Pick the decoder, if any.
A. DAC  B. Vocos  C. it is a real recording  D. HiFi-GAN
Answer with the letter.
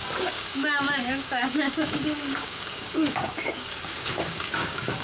A